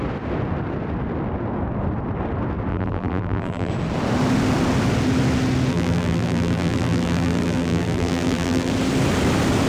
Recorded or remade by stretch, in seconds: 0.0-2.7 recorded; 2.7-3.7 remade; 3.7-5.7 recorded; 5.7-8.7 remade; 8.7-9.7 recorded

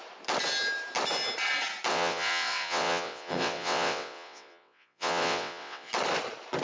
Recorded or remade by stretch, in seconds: 0.0-1.9 recorded; 1.9-5.9 remade; 5.9-6.6 recorded

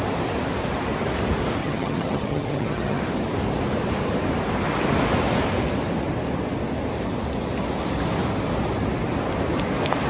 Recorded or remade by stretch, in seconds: 0.0-1.6 recorded; 1.6-3.0 remade; 3.0-10.1 recorded

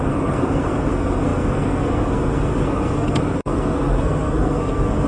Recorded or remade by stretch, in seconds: 0.0-5.1 remade

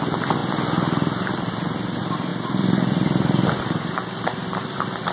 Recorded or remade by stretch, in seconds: 0.0-2.3 recorded; 2.3-5.1 remade

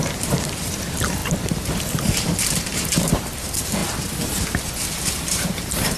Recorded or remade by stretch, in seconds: 0.0-1.2 remade; 1.2-2.0 recorded; 2.0-3.8 remade; 3.8-5.1 recorded; 5.1-6.0 remade

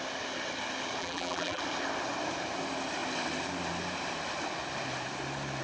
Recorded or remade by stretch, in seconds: 0.0-1.0 recorded; 1.0-1.6 remade; 1.6-5.6 recorded